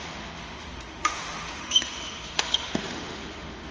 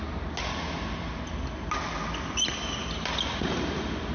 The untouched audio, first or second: second